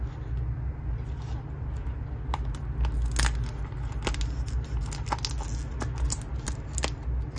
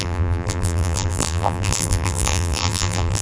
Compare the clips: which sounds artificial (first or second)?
second